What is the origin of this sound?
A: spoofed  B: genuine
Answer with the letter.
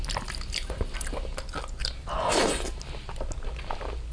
B